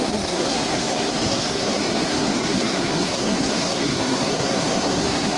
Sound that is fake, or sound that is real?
fake